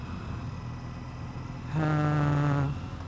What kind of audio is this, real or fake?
real